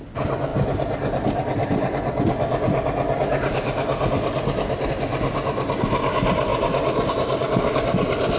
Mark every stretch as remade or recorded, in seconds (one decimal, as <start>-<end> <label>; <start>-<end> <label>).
0.0-8.4 recorded